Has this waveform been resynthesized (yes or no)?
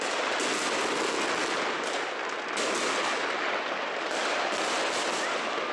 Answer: no